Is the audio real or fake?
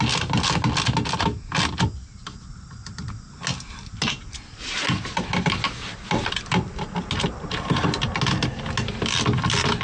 real